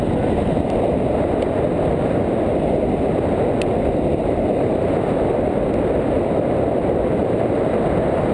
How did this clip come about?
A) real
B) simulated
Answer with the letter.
A